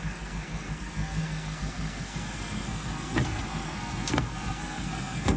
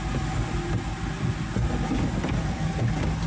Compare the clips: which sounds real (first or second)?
second